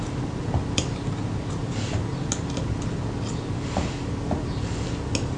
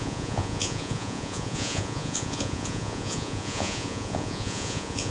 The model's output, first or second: second